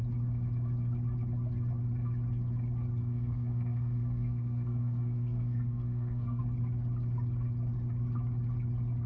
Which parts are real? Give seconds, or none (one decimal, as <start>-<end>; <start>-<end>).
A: 0.0-3.0; 6.4-9.1